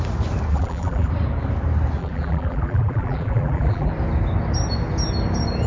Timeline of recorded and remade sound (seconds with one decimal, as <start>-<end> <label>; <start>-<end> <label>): 0.0-0.5 recorded; 0.5-1.1 remade; 1.1-2.0 recorded; 2.0-3.9 remade; 3.9-5.7 recorded